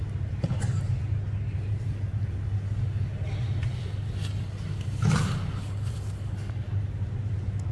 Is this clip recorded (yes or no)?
yes